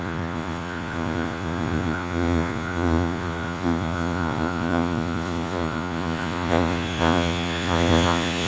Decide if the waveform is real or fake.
fake